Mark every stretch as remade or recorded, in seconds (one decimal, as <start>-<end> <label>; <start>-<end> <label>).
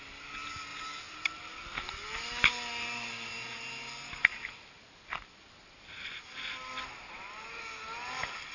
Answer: 0.0-8.5 recorded